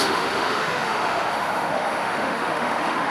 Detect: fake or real fake